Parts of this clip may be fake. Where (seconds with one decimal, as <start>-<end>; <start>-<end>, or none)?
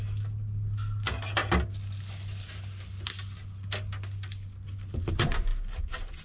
none